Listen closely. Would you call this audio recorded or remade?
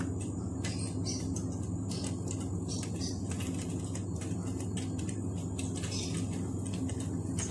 recorded